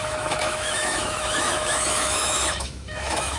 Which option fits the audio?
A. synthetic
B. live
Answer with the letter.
A